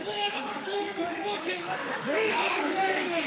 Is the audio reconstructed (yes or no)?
yes